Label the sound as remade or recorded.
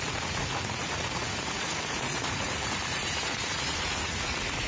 remade